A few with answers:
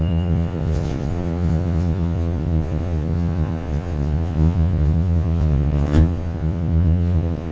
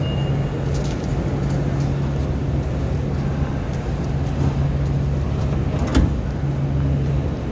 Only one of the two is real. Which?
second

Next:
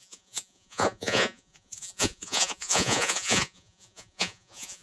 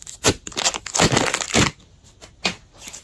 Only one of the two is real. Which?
second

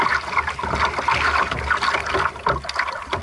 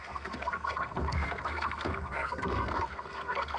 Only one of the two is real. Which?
first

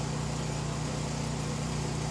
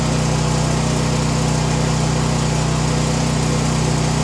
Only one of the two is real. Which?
second